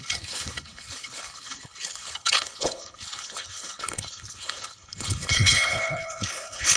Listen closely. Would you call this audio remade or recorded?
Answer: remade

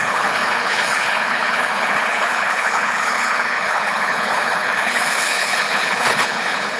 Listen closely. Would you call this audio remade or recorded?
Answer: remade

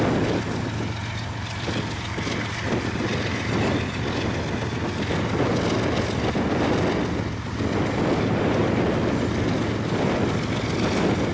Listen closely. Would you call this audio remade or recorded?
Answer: recorded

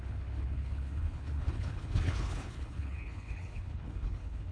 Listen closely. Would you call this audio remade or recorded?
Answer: remade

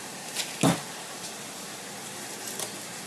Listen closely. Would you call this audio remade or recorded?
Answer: recorded